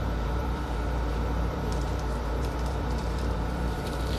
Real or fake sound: fake